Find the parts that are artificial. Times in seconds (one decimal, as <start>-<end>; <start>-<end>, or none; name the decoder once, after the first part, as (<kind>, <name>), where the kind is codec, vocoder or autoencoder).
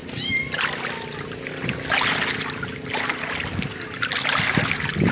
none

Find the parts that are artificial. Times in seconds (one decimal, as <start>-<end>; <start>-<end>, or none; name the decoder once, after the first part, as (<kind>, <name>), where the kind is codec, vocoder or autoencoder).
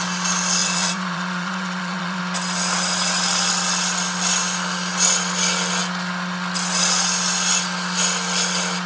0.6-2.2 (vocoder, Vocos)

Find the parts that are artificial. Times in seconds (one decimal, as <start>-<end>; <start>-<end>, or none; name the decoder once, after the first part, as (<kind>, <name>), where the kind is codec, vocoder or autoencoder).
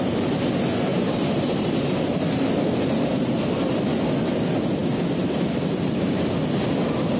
0.9-3.3 (vocoder, BigVGAN v2)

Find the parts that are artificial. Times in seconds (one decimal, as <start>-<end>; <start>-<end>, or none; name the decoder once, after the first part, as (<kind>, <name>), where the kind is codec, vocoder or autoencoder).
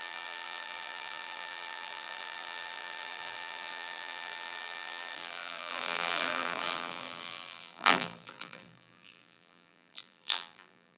0.0-11.0 (vocoder, BigVGAN v2)